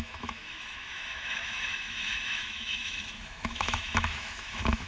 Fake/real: fake